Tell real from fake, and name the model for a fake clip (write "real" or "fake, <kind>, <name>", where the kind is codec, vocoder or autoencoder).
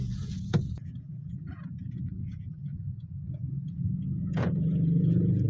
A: fake, vocoder, Vocos